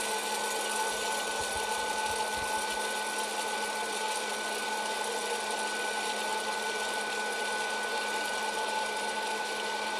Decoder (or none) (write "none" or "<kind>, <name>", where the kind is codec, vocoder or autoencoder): none